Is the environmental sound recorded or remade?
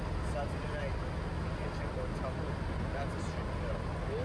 recorded